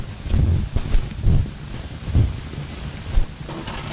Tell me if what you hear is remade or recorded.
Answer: recorded